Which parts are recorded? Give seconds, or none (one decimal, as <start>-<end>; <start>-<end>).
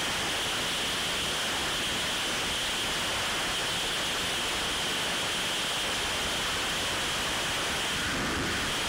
0.0-8.9